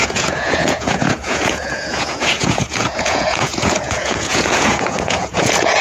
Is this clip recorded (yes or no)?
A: no